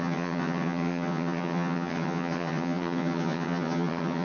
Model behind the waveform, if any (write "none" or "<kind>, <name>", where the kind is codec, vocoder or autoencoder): vocoder, HiFi-GAN